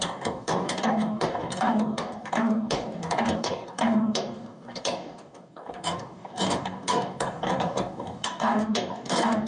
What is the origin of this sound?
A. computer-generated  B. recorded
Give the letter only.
A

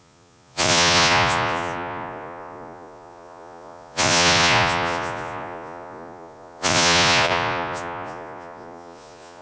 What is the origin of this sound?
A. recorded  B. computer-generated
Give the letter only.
B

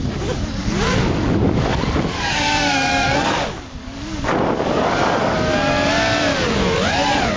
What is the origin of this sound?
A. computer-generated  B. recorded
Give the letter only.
A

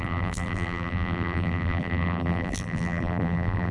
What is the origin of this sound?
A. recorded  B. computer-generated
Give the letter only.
B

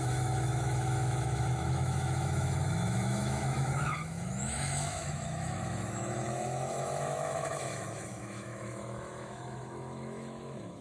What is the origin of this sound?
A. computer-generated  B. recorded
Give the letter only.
A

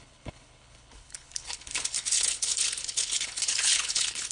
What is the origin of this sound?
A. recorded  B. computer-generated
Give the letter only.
B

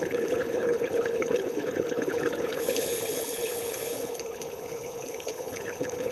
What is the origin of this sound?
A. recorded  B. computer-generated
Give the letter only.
B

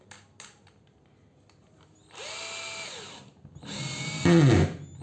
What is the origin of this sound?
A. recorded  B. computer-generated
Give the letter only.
A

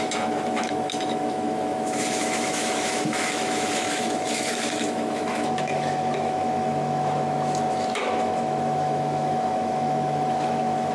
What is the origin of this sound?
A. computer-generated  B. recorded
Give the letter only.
A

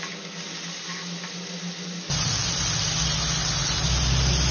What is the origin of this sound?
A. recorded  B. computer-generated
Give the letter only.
A